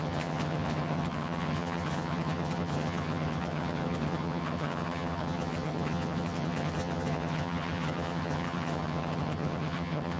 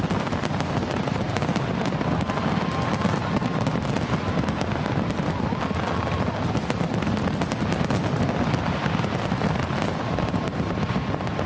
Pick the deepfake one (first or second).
first